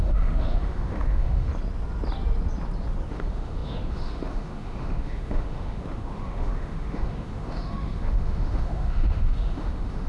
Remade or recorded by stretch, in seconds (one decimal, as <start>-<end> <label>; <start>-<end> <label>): 0.0-1.5 remade; 1.5-3.1 recorded; 3.1-10.1 remade